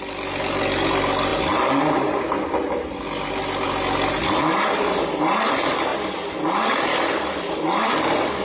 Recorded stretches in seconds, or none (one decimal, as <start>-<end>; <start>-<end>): 0.0-8.4